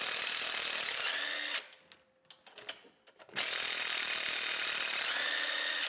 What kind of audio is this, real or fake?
real